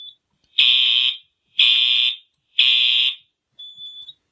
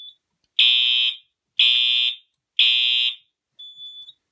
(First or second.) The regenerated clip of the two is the first